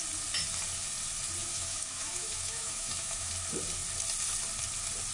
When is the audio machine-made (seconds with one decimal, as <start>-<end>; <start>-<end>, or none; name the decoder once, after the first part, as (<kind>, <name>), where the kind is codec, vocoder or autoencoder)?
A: 1.4-3.3 (autoencoder, DAC-VAE)